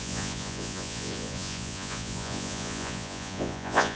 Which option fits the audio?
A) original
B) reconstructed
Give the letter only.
B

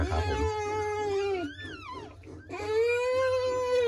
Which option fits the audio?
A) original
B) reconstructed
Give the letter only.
A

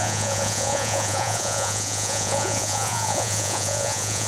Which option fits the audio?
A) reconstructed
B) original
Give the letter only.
A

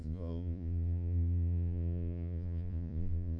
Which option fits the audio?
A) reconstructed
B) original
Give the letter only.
A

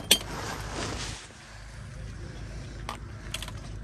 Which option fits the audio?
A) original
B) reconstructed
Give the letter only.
A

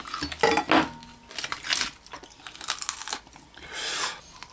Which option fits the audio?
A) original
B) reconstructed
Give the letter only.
A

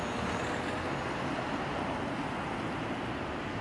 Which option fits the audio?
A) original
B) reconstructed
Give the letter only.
A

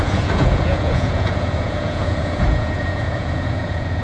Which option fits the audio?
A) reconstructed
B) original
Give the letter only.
A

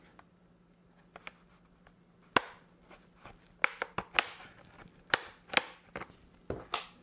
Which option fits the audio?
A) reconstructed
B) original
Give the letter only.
B